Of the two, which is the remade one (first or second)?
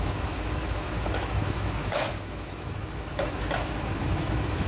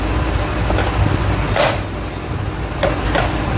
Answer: first